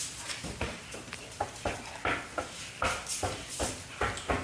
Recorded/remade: recorded